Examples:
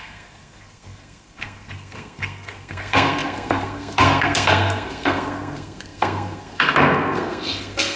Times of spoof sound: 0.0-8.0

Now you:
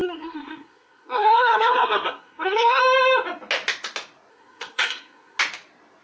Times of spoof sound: 0.0-2.8; 4.3-5.4

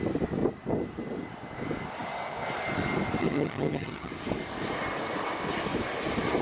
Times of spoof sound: 3.2-4.1

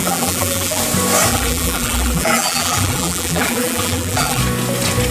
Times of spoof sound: 0.0-0.8; 1.3-4.4

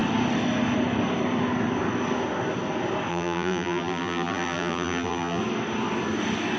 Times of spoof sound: 3.1-5.4

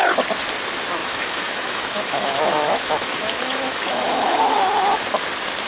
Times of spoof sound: 1.0-4.4

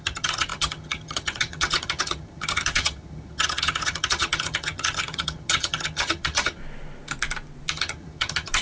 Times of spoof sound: 0.0-6.6; 7.7-8.6